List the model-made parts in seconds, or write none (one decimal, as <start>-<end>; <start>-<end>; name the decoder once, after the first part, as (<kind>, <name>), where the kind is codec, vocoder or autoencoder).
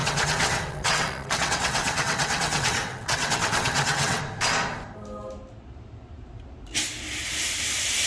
0.0-4.2 (vocoder, WaveNeXt)